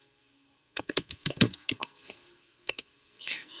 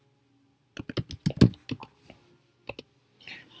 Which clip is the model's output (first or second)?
first